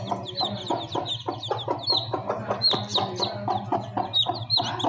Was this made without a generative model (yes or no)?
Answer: yes